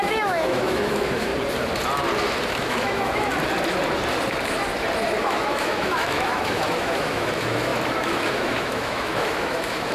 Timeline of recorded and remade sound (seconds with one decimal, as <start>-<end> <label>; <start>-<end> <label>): 0.0-1.3 remade; 1.3-2.6 recorded; 2.6-3.3 remade; 3.3-5.2 recorded; 5.2-9.9 remade

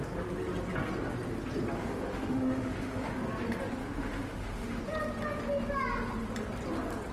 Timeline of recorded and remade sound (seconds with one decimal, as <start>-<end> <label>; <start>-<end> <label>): 0.0-1.8 recorded; 1.8-3.2 remade; 3.2-3.8 recorded; 3.8-4.8 remade; 4.8-7.1 recorded

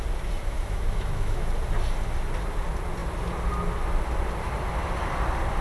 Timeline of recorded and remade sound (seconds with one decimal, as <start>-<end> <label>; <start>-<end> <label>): 0.0-0.4 recorded; 0.4-1.5 remade; 1.5-5.6 recorded

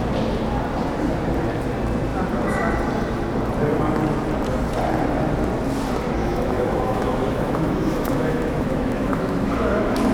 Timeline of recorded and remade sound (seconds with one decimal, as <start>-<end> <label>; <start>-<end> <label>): 0.0-6.2 recorded; 6.2-10.1 remade

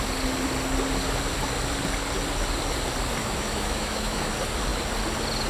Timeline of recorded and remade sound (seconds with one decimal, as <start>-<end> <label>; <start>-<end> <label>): 0.0-3.2 recorded; 3.2-4.3 remade; 4.3-5.5 recorded

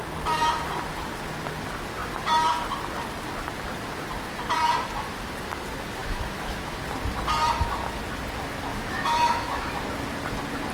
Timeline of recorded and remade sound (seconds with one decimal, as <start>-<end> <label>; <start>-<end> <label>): 0.0-6.0 recorded; 6.0-6.8 remade; 6.8-8.7 recorded; 8.7-9.7 remade; 9.7-10.7 recorded